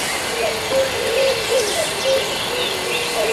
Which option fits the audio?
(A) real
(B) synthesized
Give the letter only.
A